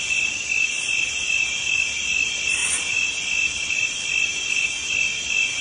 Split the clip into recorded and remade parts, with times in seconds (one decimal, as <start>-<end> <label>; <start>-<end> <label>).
0.0-5.6 recorded